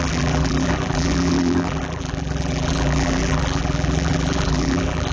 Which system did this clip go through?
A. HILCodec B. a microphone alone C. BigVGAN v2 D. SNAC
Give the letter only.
C